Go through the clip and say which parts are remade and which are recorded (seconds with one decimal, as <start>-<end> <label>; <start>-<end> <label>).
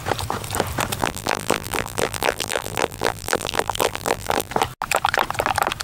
0.0-1.0 recorded; 1.0-4.5 remade; 4.5-5.8 recorded